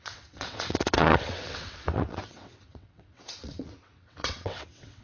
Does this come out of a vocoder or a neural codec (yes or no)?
yes